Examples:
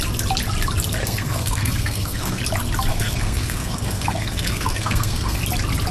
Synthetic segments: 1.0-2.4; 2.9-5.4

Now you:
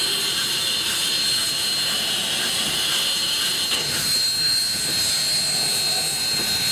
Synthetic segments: none

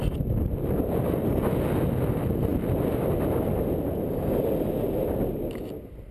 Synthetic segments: none

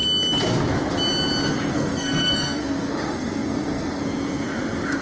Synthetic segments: 1.7-4.0

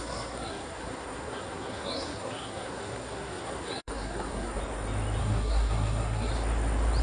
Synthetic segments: 0.0-4.6; 5.2-6.3